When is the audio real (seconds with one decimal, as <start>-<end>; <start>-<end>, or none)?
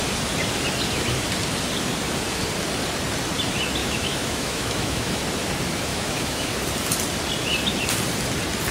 0.0-3.8; 5.2-5.9; 6.5-8.7